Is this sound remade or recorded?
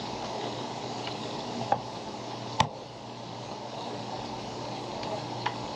remade